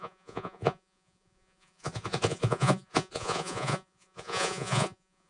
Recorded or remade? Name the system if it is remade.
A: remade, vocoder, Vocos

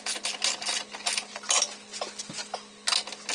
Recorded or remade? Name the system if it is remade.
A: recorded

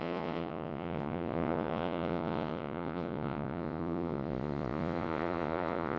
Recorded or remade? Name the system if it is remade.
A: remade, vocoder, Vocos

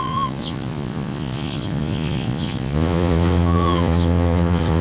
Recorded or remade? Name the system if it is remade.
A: remade, vocoder, Vocos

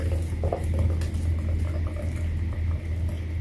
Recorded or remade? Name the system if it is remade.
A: recorded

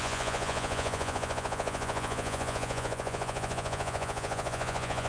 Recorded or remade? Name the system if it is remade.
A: remade, vocoder, Vocos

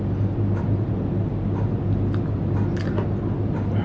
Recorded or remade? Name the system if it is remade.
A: recorded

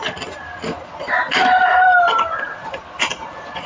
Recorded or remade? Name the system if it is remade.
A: recorded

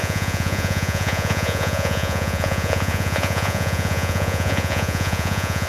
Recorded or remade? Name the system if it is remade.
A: remade, vocoder, Vocos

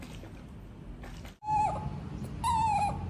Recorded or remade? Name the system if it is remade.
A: recorded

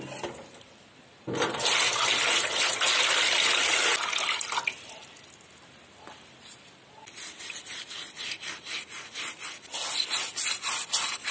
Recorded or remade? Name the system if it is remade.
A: recorded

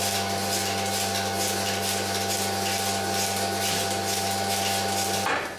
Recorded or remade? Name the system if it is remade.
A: recorded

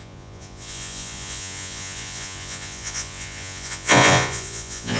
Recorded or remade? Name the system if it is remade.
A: remade, vocoder, Vocos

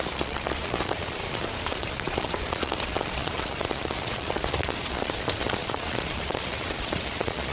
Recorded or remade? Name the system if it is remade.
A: remade, vocoder, Vocos